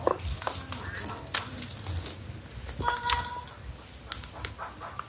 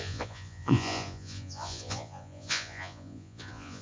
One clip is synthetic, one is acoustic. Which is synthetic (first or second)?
second